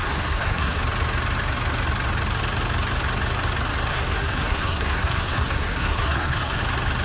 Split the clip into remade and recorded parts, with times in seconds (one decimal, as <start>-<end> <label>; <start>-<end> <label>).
0.0-0.8 remade; 0.8-3.9 recorded; 3.9-6.6 remade; 6.6-7.0 recorded